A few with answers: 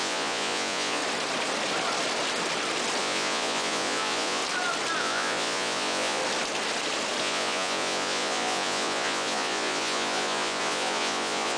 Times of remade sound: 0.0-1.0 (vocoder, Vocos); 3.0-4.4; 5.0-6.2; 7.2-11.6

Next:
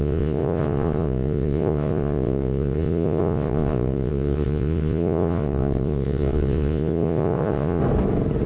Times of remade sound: 0.0-7.8 (vocoder, Vocos)